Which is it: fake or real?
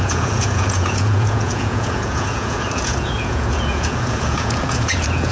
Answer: fake